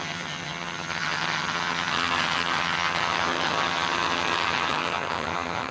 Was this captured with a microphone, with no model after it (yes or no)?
no